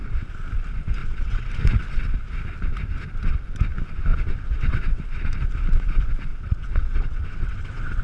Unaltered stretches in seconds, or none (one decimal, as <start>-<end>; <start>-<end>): 0.0-1.0; 1.5-4.1; 5.0-6.3

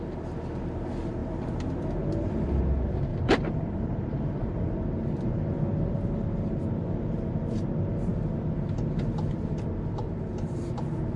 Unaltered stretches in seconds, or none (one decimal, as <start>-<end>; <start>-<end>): 0.0-3.1; 4.7-11.2

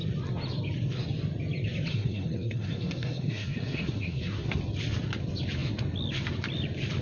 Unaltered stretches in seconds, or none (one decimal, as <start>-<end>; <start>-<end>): 0.0-1.9; 4.6-7.0

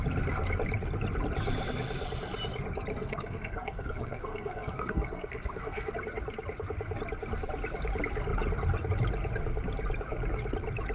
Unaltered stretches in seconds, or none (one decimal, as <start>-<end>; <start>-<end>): 0.0-2.9; 5.9-10.9

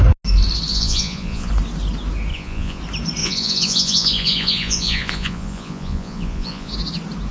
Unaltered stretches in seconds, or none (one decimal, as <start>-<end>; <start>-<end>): 0.0-0.7; 1.5-2.3; 2.8-3.2; 6.7-7.3

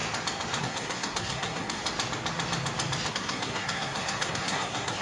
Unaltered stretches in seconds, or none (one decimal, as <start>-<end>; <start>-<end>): 0.0-0.6; 1.8-3.1

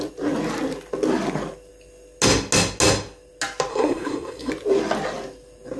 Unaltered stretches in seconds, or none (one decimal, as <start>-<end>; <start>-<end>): 0.0-3.7; 4.5-5.8

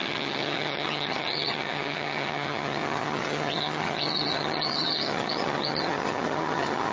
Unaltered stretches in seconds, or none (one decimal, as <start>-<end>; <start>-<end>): none